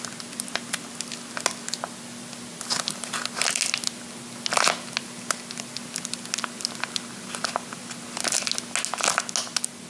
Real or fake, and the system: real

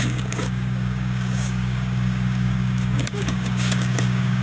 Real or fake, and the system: fake, codec, DAC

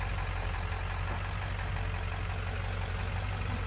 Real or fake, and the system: real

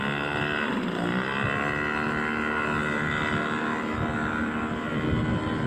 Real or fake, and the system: real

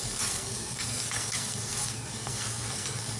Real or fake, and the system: fake, codec, SNAC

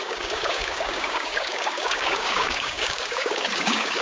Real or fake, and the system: fake, codec, DAC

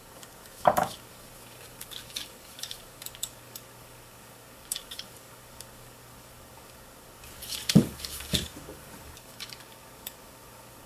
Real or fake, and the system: fake, codec, DAC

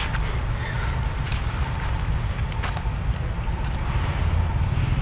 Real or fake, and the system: real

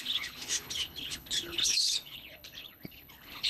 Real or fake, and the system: fake, codec, HILCodec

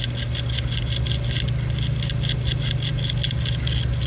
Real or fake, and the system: real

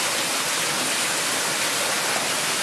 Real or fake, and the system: real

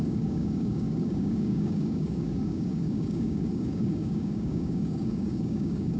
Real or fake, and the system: fake, codec, DAC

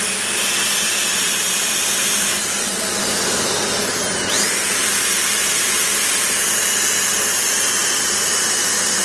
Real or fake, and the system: real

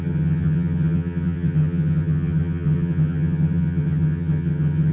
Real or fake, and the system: fake, vocoder, HiFi-GAN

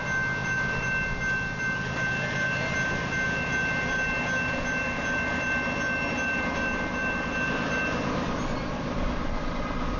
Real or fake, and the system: real